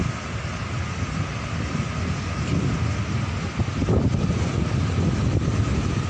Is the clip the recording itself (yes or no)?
yes